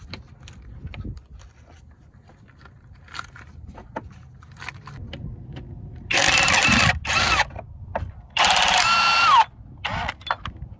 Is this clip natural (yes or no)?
yes